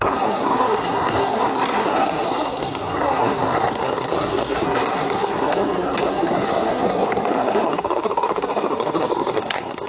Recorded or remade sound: remade